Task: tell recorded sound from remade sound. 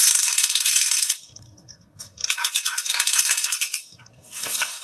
remade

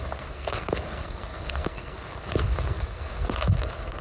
remade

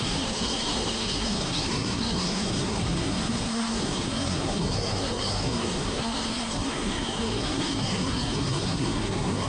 remade